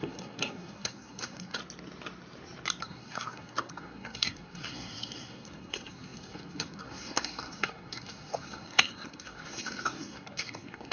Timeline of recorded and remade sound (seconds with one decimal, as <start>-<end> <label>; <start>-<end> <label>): 0.0-1.6 remade; 1.6-2.8 recorded; 2.8-10.9 remade